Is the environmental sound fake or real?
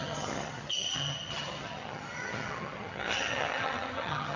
fake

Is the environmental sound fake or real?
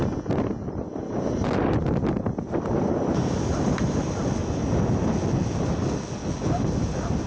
real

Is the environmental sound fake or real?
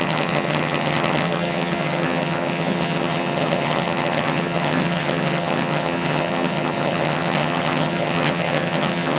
fake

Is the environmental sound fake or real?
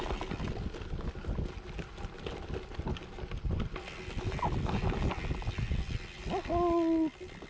real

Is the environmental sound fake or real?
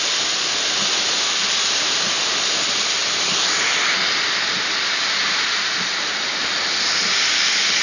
real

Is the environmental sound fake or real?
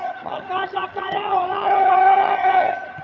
fake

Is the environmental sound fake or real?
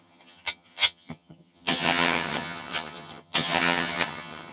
fake